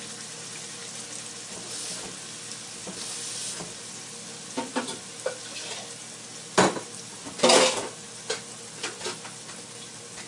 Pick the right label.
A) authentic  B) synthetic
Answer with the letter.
A